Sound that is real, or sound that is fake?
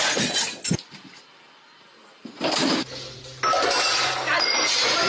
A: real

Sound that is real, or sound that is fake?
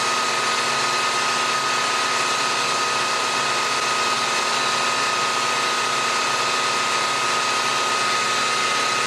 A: real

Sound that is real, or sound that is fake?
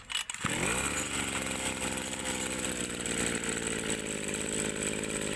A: real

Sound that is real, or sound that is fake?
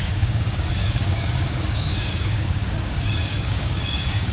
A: fake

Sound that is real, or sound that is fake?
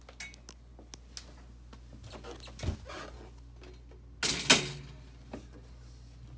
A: real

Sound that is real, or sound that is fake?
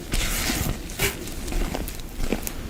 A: real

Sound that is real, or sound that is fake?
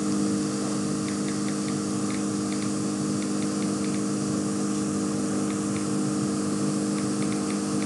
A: real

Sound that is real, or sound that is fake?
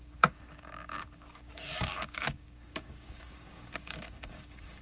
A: fake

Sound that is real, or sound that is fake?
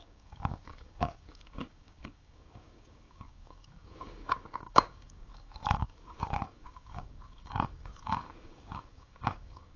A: fake